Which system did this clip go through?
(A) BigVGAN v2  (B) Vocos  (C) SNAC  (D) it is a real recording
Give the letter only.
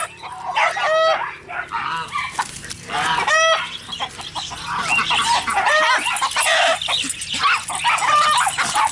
D